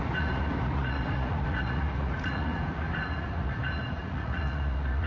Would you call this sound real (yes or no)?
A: no